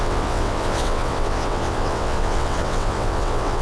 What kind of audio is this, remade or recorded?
remade